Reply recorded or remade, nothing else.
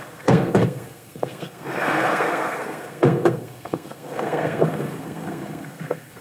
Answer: remade